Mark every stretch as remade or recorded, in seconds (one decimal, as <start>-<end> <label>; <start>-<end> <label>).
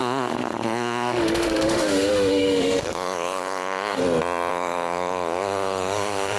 0.0-4.0 remade; 4.0-4.5 recorded; 4.5-6.4 remade